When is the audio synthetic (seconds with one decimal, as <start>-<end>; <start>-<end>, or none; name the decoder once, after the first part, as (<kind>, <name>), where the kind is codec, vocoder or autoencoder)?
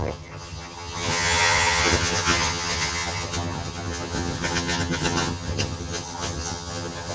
0.0-7.1 (vocoder, HiFi-GAN)